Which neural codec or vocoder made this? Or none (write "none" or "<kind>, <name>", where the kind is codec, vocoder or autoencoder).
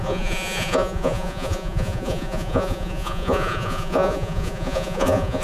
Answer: vocoder, Vocos